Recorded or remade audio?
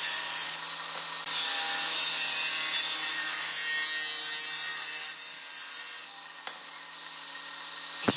recorded